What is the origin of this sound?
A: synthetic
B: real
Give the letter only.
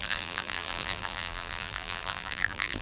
A